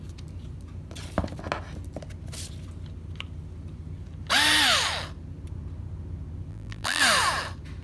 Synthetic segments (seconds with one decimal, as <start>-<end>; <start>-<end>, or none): 6.5-7.0